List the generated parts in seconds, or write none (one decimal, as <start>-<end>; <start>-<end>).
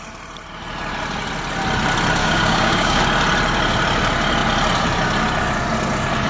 2.2-3.0